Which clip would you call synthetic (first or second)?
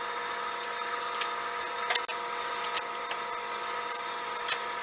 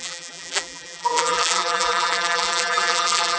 second